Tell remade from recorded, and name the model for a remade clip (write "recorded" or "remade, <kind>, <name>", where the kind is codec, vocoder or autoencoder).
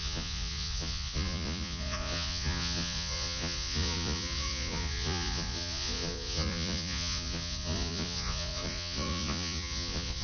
remade, vocoder, Vocos